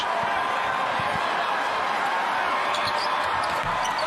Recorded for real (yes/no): yes